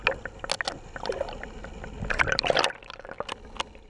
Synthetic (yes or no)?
no